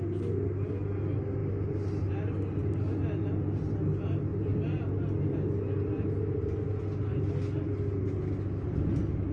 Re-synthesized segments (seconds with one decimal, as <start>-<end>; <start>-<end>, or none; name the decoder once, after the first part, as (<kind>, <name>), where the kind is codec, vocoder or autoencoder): none